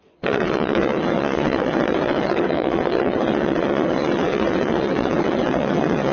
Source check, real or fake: fake